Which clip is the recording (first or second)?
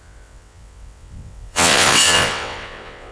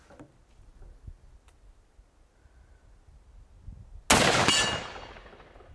second